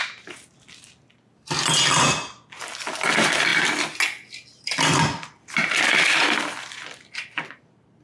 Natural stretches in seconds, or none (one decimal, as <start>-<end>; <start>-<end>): 0.0-8.0